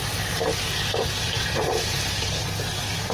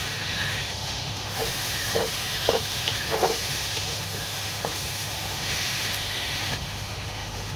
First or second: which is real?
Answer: first